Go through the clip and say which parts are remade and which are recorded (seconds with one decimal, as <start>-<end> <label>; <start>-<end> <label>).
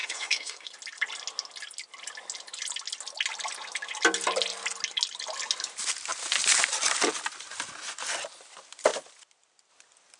0.0-0.7 remade; 0.7-10.2 recorded